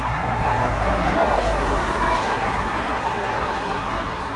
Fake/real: fake